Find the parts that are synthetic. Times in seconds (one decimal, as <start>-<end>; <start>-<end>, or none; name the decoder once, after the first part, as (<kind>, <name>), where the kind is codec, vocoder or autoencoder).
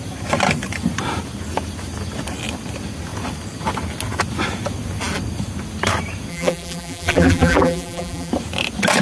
6.3-8.3 (vocoder, BigVGAN v2)